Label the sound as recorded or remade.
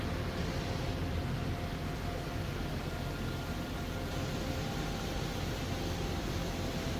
recorded